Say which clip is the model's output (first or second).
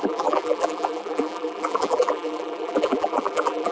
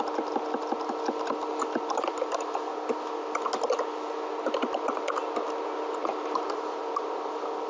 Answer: first